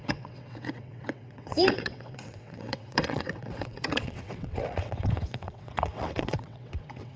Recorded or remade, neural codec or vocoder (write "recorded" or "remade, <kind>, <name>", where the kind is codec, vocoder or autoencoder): remade, vocoder, WaveNeXt